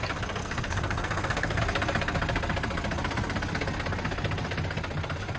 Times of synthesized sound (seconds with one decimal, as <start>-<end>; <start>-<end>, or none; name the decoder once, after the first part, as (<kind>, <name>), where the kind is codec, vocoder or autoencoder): 0.4-1.6 (codec, SNAC)